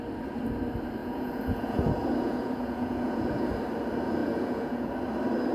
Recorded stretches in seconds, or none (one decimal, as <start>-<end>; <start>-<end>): 0.0-1.0; 3.5-4.2; 4.9-5.5